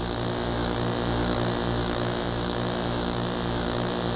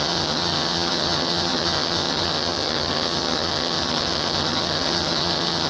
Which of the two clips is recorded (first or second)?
first